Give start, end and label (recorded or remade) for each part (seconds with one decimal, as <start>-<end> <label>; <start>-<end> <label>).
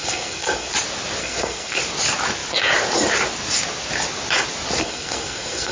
0.0-0.7 remade; 0.7-1.2 recorded; 1.2-1.8 remade; 1.8-4.8 recorded; 4.8-5.7 remade